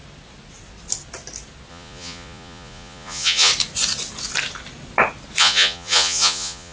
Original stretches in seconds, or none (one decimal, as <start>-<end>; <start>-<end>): 0.0-1.7; 3.5-5.4